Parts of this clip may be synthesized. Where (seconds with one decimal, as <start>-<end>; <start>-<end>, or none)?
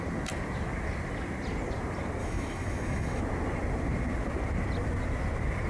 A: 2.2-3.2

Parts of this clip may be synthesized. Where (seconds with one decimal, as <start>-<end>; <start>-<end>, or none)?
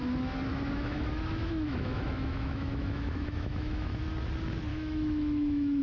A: 0.5-4.0; 4.7-5.8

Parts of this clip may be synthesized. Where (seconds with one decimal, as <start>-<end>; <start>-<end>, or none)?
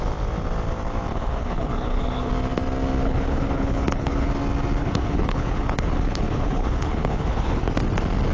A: 1.1-2.3; 3.0-4.3; 4.8-7.7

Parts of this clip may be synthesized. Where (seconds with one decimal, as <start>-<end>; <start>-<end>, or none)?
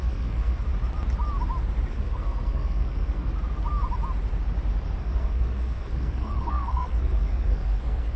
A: 0.0-0.7; 1.9-3.3; 5.0-8.2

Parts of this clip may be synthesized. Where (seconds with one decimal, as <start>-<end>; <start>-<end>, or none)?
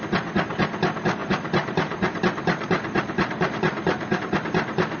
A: 1.2-4.2